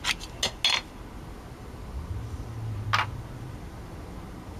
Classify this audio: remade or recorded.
recorded